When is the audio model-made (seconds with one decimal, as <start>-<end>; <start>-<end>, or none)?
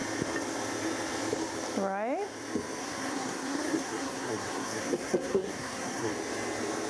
2.8-6.1